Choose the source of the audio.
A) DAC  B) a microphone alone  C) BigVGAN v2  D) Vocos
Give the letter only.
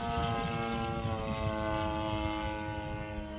B